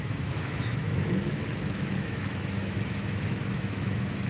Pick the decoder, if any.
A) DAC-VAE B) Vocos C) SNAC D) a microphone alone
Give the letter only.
A